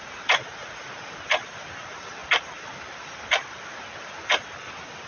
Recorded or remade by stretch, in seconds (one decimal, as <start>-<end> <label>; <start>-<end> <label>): 0.0-0.5 recorded; 0.5-1.2 remade; 1.2-5.1 recorded

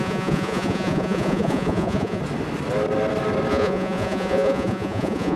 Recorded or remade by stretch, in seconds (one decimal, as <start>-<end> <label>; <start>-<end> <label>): 0.0-2.2 remade; 2.2-3.5 recorded; 3.5-5.4 remade

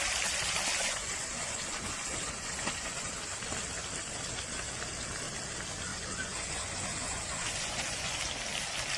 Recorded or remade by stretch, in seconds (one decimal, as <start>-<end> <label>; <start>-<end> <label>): 0.0-0.8 recorded; 0.8-3.1 remade; 3.1-5.9 recorded; 5.9-8.2 remade; 8.2-9.0 recorded